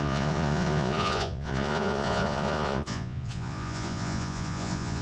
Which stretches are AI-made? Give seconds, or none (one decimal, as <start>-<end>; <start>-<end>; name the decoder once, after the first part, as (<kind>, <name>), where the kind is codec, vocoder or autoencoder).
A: 0.0-5.0 (vocoder, Vocos)